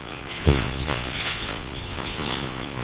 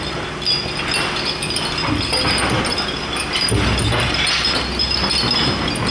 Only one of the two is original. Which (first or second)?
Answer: second